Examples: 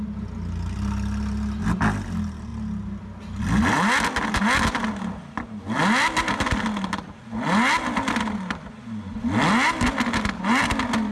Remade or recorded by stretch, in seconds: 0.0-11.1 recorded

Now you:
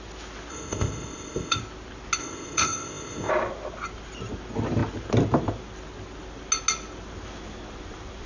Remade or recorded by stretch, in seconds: 0.0-0.5 recorded; 0.5-1.6 remade; 1.6-2.2 recorded; 2.2-3.3 remade; 3.3-8.3 recorded

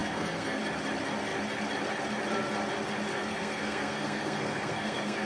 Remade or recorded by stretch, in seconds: 0.0-0.6 remade; 0.6-3.1 recorded; 3.1-5.3 remade